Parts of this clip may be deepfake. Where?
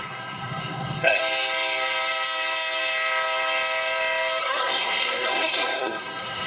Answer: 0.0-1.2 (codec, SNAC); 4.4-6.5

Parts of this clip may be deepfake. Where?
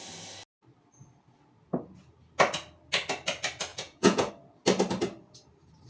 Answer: 3.7-4.3 (vocoder, Vocos)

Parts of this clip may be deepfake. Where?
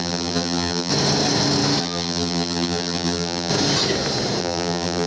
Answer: 0.0-0.9 (vocoder, BigVGAN v2); 1.8-3.5; 4.4-5.1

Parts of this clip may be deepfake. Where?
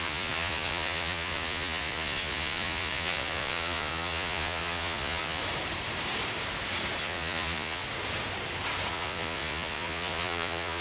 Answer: 0.0-5.4 (vocoder, Vocos); 7.0-7.8; 8.9-10.8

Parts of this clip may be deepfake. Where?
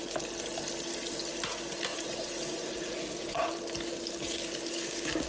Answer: 1.9-3.5 (vocoder, Vocos)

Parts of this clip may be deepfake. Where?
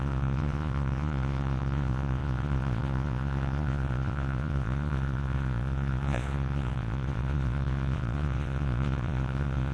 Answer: 0.0-9.7 (vocoder, Vocos)